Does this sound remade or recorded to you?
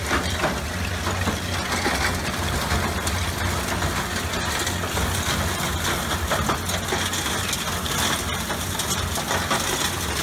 recorded